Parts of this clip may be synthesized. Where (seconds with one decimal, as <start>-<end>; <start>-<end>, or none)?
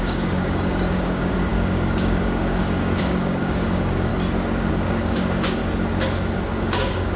0.0-4.1; 4.7-5.6; 6.6-7.2